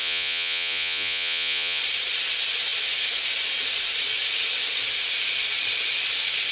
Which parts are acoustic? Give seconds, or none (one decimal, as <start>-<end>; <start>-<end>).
1.8-6.5

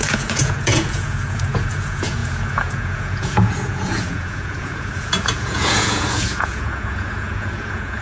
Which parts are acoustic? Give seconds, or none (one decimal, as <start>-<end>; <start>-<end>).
none